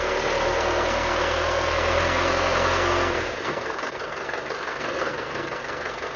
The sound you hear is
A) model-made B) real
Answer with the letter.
A